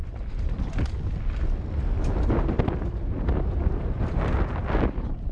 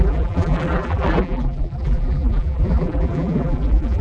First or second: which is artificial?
second